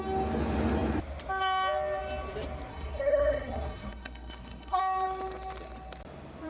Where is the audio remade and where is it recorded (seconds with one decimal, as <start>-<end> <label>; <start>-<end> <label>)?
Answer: 0.0-2.7 recorded; 2.7-4.8 remade; 4.8-6.5 recorded